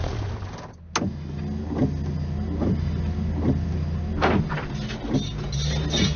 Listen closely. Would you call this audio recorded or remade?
recorded